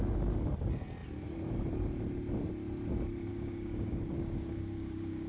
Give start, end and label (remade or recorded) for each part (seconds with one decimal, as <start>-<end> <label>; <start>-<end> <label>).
0.0-3.3 recorded; 3.3-5.3 remade